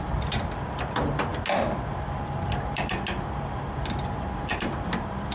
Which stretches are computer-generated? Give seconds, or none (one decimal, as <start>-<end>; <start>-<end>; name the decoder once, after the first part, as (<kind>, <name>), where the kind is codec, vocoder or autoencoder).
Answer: none